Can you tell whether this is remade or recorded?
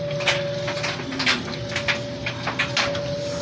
recorded